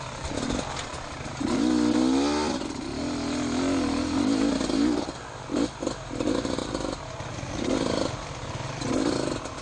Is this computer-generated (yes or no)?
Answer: no